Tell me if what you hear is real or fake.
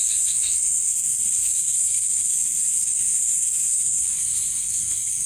fake